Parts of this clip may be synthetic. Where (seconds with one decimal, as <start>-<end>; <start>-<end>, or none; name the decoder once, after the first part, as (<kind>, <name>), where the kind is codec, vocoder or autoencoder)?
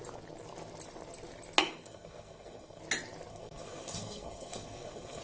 1.6-2.8 (codec, SNAC); 3.3-5.2